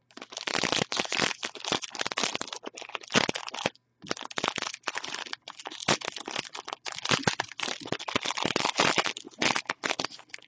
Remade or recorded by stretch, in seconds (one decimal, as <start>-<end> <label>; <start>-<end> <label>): 0.0-5.8 recorded; 5.8-7.6 remade; 7.6-10.5 recorded